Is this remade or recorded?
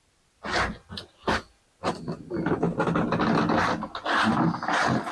recorded